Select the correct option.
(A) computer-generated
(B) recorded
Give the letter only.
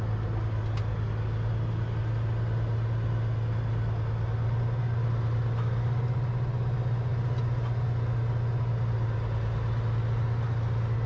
B